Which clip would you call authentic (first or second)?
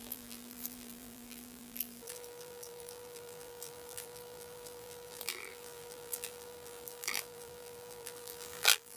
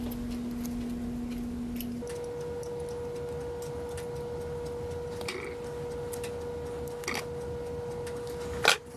second